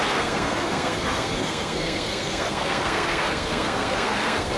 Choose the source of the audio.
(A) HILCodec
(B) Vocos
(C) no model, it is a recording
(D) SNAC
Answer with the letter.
D